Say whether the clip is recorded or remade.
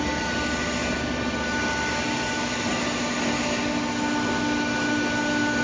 recorded